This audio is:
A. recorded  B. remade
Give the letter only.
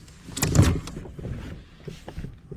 A